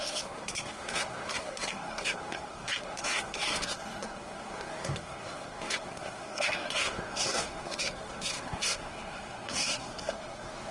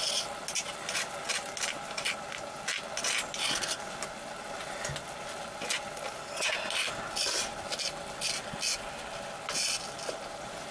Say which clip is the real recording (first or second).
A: second